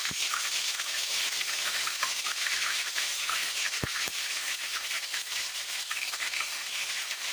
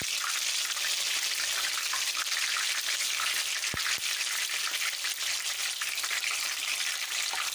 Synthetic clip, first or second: first